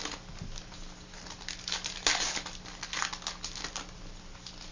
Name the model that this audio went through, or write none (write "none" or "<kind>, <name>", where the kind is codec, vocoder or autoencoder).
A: none